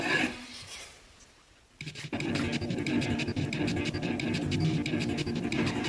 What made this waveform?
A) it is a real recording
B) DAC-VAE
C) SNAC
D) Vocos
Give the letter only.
A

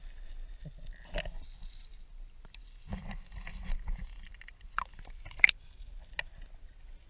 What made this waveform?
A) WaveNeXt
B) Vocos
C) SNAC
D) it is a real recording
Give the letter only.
D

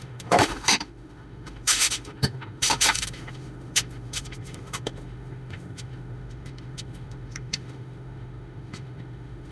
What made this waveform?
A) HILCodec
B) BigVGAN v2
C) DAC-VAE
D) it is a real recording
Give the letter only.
C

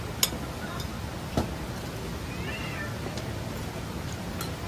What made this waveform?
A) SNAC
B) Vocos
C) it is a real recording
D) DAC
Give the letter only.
C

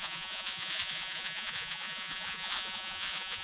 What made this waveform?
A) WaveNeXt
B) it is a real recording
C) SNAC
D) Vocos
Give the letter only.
D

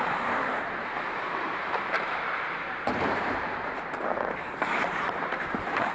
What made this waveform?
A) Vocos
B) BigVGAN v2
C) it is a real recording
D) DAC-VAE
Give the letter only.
B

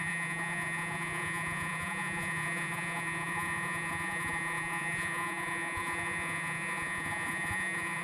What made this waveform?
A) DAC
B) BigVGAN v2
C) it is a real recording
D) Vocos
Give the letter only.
D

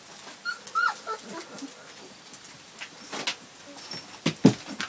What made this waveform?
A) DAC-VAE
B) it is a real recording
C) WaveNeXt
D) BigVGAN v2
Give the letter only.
B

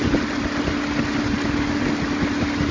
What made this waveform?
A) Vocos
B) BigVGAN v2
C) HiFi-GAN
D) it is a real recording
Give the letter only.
D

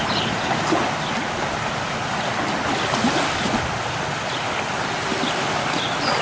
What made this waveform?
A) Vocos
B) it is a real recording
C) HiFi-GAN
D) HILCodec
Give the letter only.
B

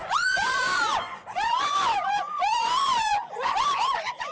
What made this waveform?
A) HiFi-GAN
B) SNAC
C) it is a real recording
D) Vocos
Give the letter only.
D